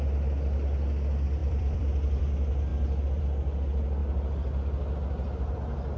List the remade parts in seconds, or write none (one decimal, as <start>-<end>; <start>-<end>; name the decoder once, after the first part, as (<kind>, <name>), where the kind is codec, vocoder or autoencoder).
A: 1.4-2.3 (vocoder, BigVGAN v2)